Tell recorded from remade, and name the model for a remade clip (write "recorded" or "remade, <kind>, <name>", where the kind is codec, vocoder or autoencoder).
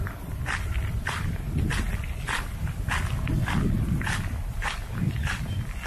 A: recorded